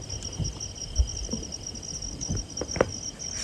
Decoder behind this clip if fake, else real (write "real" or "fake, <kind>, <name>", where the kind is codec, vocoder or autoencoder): real